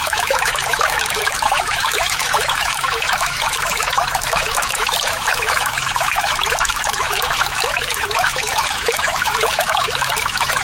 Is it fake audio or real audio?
fake